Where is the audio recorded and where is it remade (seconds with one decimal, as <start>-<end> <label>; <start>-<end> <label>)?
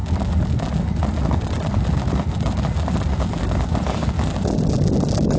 0.0-5.4 recorded